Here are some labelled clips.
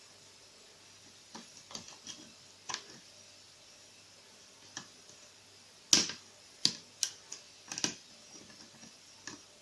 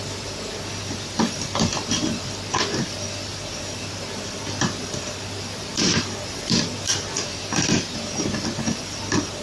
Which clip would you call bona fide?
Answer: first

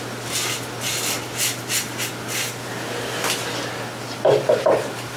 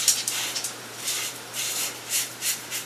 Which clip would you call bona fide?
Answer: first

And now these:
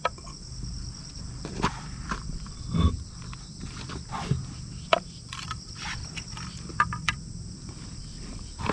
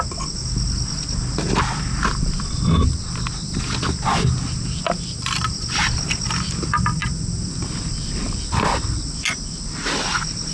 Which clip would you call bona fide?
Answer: second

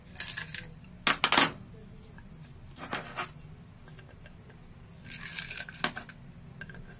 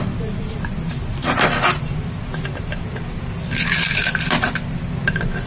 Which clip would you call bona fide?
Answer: first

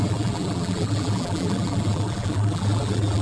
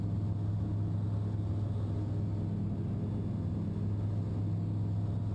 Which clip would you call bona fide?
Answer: second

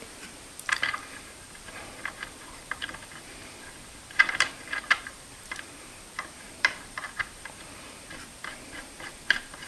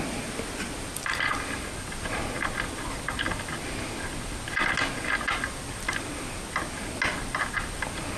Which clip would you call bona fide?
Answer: second